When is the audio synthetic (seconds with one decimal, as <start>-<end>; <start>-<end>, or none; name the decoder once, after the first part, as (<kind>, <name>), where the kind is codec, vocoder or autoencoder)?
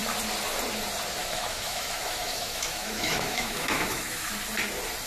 1.2-4.3 (autoencoder, DAC-VAE)